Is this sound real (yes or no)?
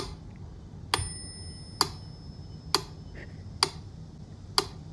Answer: yes